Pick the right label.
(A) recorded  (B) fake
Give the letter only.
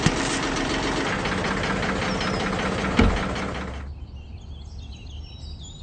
A